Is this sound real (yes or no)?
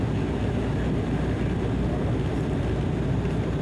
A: yes